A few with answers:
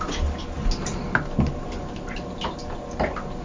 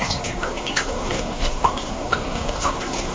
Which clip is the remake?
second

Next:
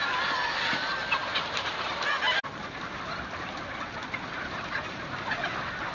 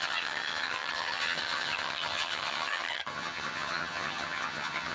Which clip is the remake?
second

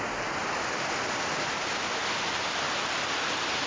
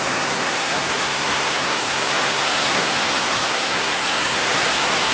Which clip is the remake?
second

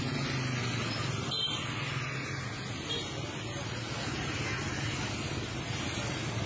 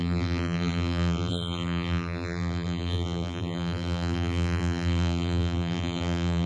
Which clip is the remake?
second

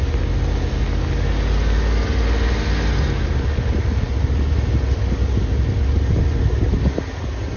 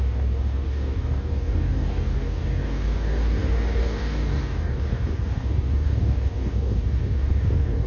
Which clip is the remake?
second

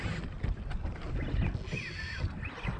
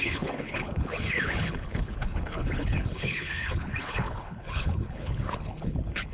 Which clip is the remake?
second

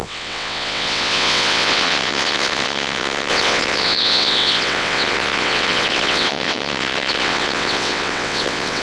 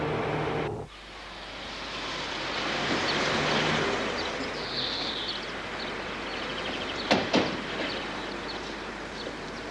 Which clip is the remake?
first